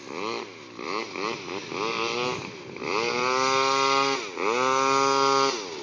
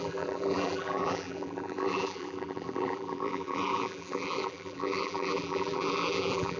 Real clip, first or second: first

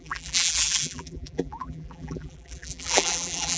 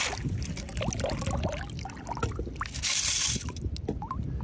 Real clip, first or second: second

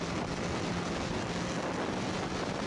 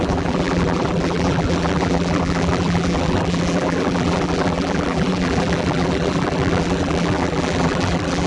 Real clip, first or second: first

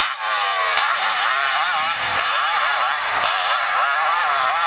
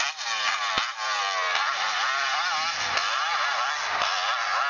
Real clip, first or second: second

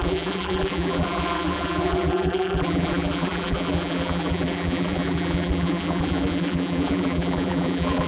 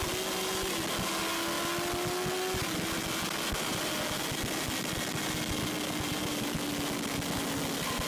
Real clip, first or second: second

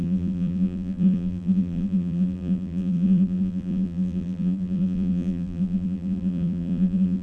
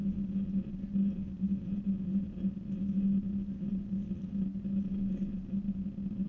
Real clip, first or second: second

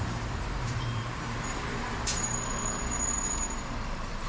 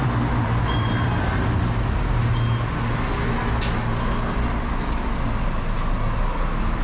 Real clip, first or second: second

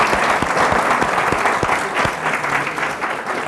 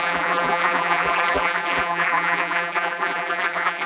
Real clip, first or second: first